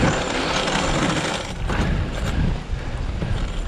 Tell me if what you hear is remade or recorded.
recorded